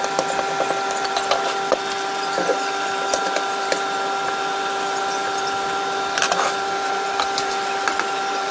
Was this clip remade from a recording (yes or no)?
yes